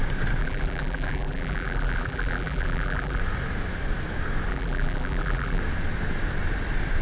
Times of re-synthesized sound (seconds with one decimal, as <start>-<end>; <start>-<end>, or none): 0.4-3.2; 4.5-5.6

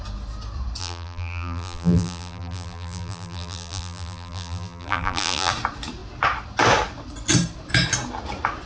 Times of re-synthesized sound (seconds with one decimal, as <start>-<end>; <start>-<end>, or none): 0.8-5.5

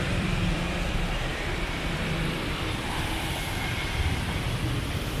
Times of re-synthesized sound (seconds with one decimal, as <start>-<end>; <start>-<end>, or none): 0.0-5.2

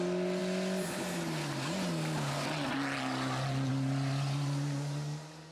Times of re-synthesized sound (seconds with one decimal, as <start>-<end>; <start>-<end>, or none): none

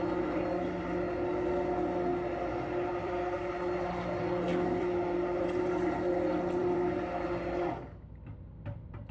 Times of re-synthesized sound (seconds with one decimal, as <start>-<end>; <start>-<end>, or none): 2.1-3.5; 4.5-5.6; 6.6-9.1

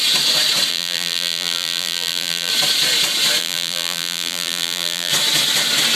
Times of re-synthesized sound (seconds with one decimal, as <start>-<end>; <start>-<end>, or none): 0.7-2.5; 3.4-5.1

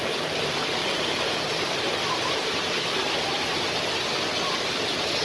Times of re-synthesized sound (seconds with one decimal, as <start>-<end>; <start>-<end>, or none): 0.8-3.9

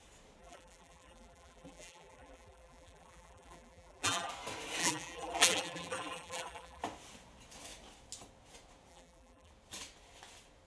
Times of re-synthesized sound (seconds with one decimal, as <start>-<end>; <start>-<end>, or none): 0.4-4.3; 4.8-6.8; 8.9-9.5